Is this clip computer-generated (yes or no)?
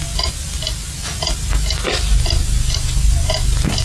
no